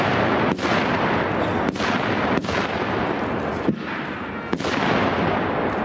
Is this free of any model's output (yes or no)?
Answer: yes